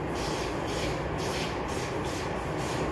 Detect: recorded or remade recorded